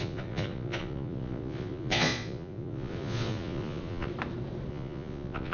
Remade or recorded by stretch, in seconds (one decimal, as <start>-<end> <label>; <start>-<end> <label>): 0.0-4.1 remade; 4.1-4.7 recorded; 4.7-5.5 remade